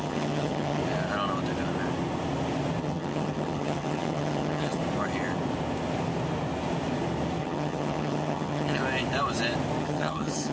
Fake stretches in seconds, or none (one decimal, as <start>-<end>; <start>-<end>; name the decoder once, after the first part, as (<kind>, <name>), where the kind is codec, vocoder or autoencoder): 0.0-0.8 (vocoder, HiFi-GAN); 2.8-4.8; 7.4-8.8; 9.8-10.5